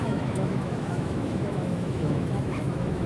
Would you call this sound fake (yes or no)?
yes